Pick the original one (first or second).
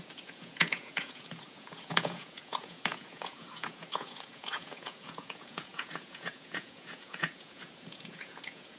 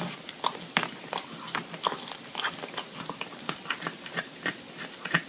second